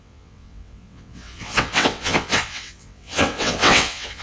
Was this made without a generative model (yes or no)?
no